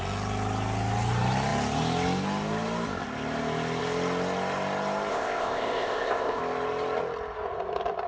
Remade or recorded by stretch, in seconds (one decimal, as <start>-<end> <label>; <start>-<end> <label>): 0.0-5.1 recorded; 5.1-6.4 remade; 6.4-8.1 recorded